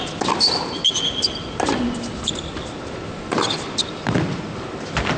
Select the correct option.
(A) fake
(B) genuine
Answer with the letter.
B